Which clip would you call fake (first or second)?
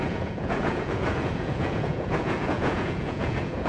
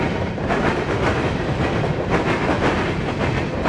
first